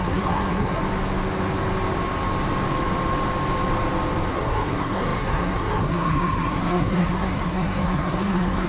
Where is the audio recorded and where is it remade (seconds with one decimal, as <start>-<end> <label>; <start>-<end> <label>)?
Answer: 0.0-0.8 remade; 0.8-4.3 recorded; 4.3-8.7 remade